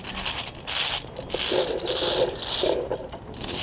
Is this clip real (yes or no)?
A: yes